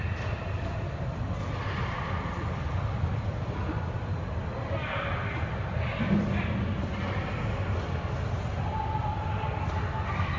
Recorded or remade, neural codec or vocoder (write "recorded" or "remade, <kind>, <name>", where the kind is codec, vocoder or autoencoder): recorded